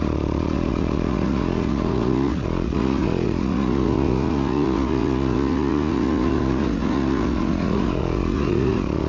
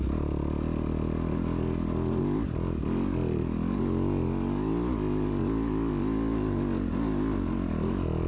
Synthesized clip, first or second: first